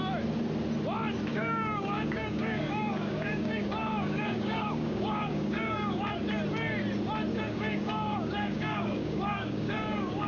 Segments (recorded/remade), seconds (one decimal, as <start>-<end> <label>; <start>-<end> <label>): 0.0-1.3 recorded; 1.3-6.0 remade; 6.0-7.3 recorded; 7.3-10.3 remade